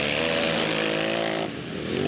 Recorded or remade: recorded